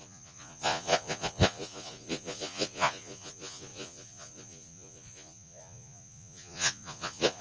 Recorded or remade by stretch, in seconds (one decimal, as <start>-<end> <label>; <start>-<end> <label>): 0.0-7.4 remade